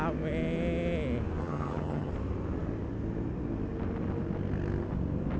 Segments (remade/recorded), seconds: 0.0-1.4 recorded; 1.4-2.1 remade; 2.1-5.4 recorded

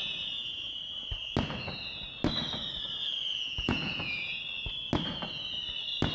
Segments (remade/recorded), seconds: 0.0-0.8 remade; 0.8-3.3 recorded; 3.3-4.2 remade; 4.2-6.1 recorded

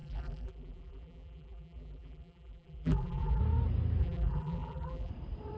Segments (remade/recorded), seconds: 0.0-3.4 remade; 3.4-4.0 recorded; 4.0-5.1 remade; 5.1-5.6 recorded

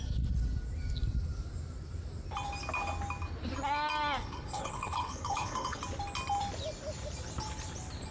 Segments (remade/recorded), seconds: 0.0-4.2 recorded; 4.2-5.8 remade; 5.8-8.1 recorded